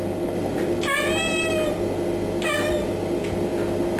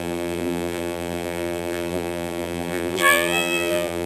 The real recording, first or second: first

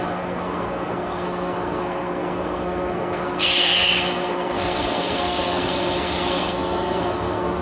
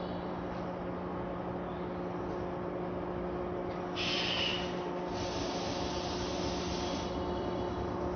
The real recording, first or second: second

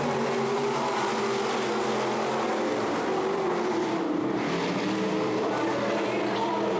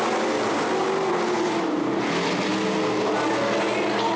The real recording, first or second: second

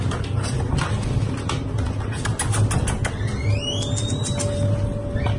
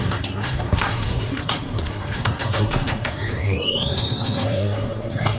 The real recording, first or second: first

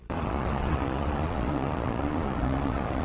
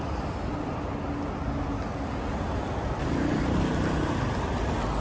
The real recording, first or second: second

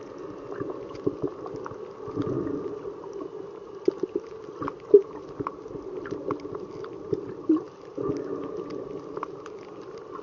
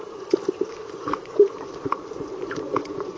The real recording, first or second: first